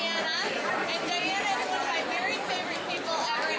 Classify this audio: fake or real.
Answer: real